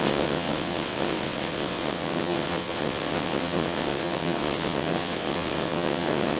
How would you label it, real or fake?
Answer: fake